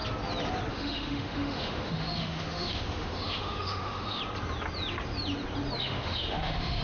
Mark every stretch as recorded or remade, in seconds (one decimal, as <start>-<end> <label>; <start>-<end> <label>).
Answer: 0.0-0.7 recorded; 0.7-4.2 remade; 4.2-5.8 recorded; 5.8-6.8 remade